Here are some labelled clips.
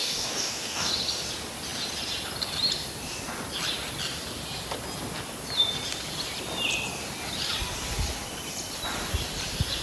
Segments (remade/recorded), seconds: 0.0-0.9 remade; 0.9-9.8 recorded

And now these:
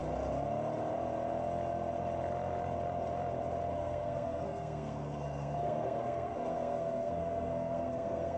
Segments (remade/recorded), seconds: 0.0-3.7 recorded; 3.7-8.4 remade